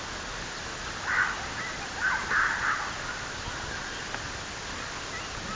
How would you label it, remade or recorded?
recorded